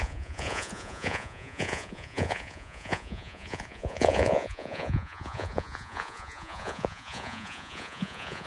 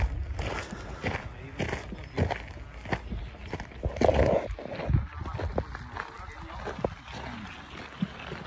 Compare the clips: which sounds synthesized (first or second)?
first